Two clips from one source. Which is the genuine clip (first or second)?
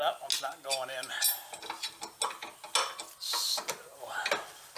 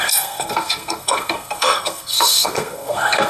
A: first